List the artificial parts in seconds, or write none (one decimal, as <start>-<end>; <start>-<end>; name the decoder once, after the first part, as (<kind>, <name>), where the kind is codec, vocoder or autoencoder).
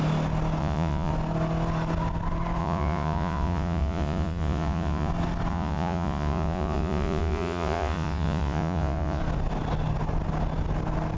0.6-1.1 (vocoder, Vocos); 2.6-5.1; 5.5-9.2